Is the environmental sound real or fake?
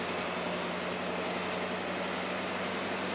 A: real